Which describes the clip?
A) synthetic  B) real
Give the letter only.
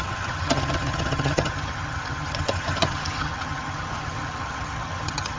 A